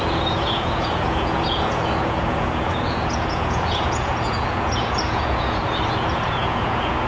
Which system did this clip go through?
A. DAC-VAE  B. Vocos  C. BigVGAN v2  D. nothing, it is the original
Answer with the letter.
B